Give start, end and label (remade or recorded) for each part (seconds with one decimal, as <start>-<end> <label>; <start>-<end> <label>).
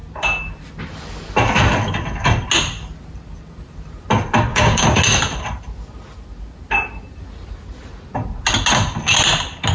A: 0.0-4.5 recorded; 4.5-5.0 remade; 5.0-9.7 recorded